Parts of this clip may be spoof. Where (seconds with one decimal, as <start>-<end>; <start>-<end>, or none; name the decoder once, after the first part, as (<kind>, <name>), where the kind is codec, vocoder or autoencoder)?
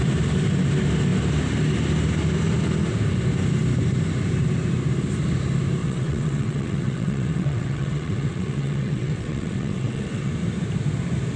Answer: 5.8-10.3 (vocoder, WaveNeXt)